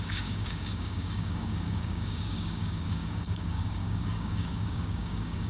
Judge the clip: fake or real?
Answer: fake